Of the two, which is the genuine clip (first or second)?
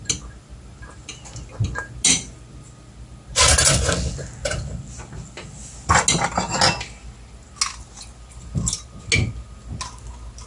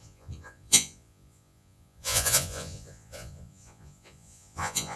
first